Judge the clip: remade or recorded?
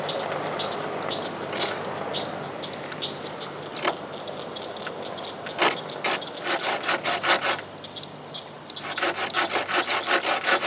recorded